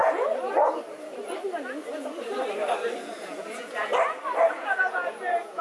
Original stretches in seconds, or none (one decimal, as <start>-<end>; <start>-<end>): 0.0-3.0; 3.9-4.5